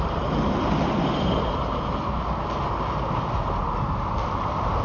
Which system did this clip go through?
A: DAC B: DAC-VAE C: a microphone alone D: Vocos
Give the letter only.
C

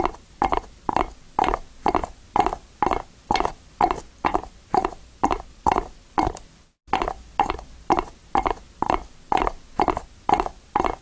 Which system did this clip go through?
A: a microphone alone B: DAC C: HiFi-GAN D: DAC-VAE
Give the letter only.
A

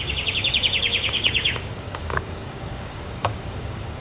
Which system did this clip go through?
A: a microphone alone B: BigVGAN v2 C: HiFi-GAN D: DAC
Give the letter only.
D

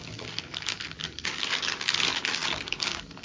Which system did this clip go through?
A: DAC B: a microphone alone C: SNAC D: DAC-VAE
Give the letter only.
A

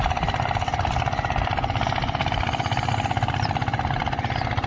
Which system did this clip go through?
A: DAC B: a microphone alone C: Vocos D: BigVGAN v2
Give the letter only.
B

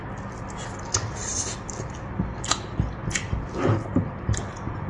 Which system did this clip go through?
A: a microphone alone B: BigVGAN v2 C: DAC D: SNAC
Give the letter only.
A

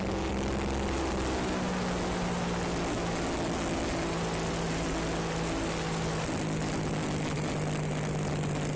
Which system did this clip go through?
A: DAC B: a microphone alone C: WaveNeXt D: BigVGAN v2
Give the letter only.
B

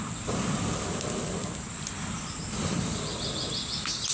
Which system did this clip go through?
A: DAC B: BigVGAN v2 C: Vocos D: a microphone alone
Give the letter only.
D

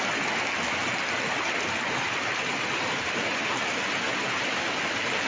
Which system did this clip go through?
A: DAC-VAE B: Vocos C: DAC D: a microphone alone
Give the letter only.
D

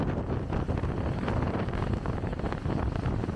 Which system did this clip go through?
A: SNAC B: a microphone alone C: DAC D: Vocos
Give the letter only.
B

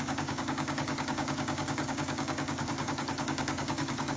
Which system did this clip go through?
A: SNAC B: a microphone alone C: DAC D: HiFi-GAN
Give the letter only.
C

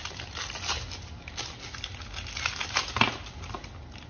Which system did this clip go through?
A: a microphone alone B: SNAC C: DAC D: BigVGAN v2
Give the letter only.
A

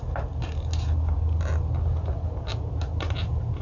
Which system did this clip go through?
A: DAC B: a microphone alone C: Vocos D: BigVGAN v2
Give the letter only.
B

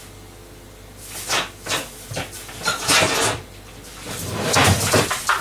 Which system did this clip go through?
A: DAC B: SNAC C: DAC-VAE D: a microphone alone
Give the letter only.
D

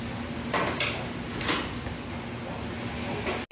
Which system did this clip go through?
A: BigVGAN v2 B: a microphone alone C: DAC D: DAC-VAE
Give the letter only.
B